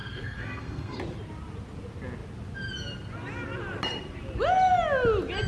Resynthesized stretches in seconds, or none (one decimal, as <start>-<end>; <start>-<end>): 0.0-1.0